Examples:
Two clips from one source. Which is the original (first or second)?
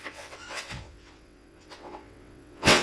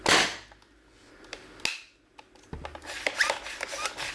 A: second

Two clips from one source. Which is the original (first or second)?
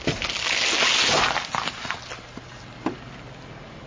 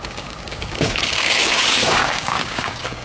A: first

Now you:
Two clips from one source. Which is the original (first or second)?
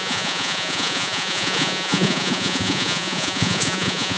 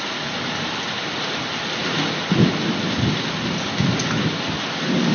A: second